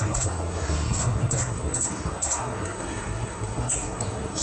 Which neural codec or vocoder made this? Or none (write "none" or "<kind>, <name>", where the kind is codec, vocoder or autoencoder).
codec, SNAC